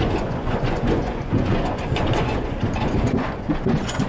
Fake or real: fake